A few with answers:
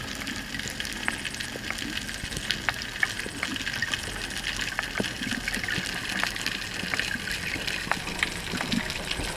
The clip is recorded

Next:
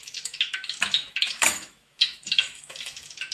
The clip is remade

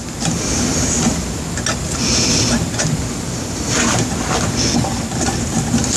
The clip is recorded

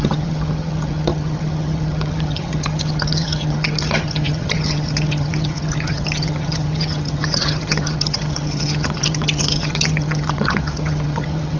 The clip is remade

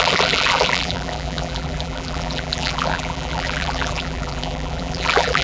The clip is remade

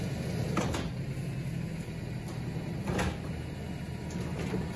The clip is recorded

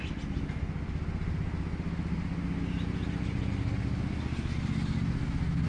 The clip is recorded